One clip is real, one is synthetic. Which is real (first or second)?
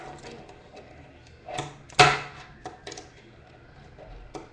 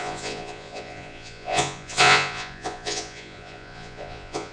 first